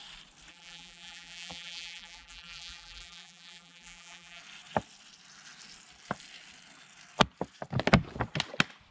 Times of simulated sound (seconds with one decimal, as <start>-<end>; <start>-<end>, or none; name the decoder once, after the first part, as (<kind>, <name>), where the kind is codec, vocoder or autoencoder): 0.5-4.4 (vocoder, BigVGAN v2)